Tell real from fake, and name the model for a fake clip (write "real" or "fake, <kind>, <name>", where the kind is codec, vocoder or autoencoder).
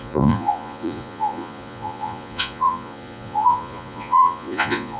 fake, vocoder, Vocos